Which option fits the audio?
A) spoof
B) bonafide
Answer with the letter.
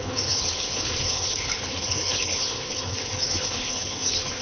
A